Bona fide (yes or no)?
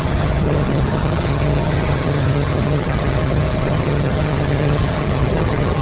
no